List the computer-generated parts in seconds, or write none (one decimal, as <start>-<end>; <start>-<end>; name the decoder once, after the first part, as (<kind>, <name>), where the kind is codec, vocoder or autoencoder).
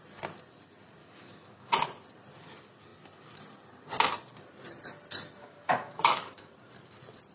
1.0-1.7 (autoencoder, DAC-VAE); 5.4-6.5